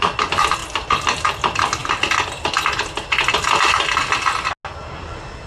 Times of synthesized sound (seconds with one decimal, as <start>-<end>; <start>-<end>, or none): none